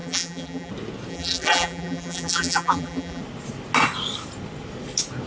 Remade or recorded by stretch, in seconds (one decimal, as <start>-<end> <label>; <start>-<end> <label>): 0.0-0.7 remade; 0.7-1.1 recorded; 1.1-3.2 remade; 3.2-5.3 recorded